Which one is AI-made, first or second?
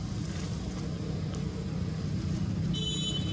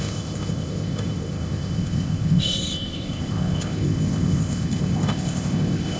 second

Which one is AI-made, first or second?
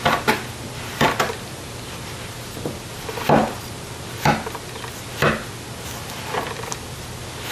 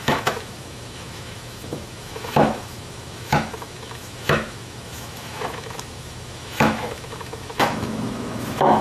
second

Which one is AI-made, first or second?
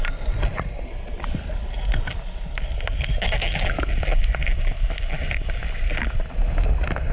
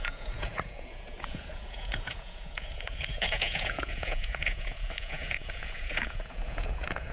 second